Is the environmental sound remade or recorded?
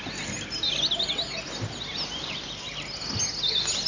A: recorded